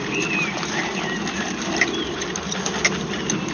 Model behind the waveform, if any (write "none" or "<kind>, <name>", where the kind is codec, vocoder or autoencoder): vocoder, BigVGAN v2